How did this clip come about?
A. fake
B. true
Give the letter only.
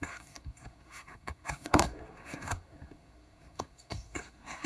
A